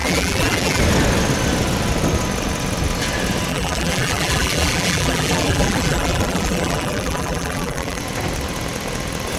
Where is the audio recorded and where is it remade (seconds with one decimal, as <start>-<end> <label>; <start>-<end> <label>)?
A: 0.0-0.8 remade; 0.8-3.5 recorded; 3.5-8.0 remade; 8.0-9.4 recorded